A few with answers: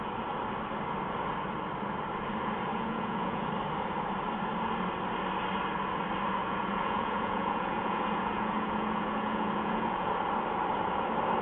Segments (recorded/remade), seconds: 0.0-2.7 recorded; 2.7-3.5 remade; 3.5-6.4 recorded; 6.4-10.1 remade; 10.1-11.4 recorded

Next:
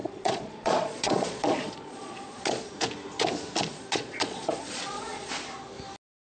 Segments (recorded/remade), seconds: 0.0-2.7 remade; 2.7-3.7 recorded; 3.7-5.3 remade; 5.3-6.2 recorded